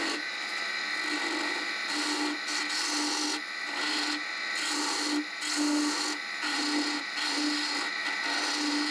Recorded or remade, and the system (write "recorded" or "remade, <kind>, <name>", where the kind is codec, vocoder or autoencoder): recorded